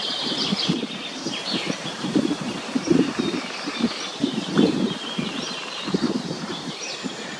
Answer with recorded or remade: remade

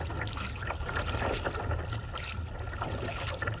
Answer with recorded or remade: recorded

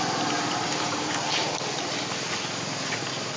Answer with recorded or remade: recorded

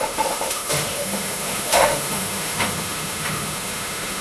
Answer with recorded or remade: remade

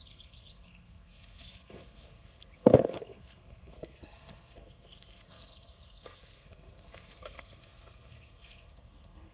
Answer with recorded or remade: remade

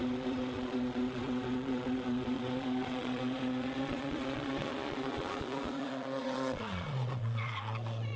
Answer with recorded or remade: remade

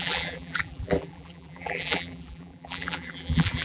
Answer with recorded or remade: remade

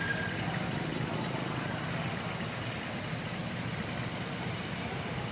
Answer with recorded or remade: recorded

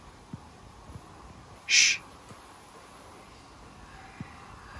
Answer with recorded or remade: recorded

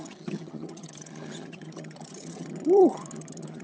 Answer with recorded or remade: remade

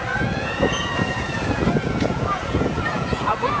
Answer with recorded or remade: remade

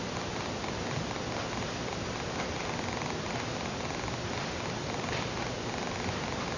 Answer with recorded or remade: recorded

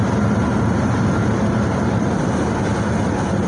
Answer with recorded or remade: recorded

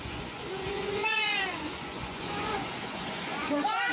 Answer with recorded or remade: remade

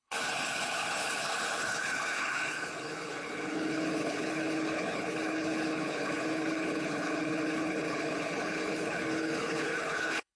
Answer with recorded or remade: remade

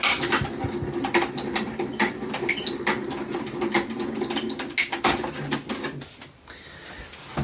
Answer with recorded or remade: recorded